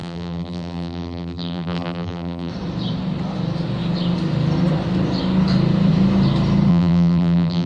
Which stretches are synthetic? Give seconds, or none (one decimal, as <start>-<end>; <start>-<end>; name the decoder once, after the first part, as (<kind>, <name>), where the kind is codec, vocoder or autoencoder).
0.0-2.5 (vocoder, BigVGAN v2); 6.7-7.7